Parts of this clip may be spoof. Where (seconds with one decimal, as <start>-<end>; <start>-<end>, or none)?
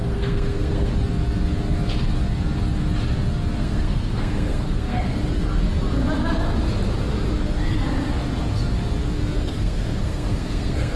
0.0-0.9; 3.6-5.2; 9.4-11.0